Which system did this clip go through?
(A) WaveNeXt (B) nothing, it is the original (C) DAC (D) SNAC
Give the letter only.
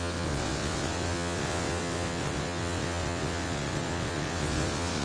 A